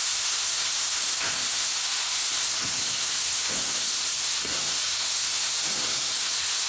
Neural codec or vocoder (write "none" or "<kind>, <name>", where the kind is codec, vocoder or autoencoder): codec, SNAC